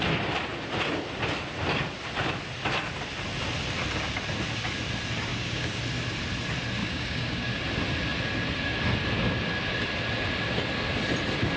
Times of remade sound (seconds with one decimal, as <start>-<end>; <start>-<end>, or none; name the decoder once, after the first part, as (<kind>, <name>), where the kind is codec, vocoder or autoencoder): 5.3-5.8 (codec, DAC); 6.8-7.5